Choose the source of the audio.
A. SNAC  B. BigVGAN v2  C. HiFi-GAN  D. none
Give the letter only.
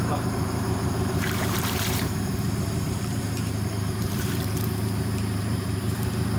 B